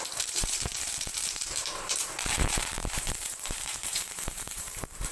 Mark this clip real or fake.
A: fake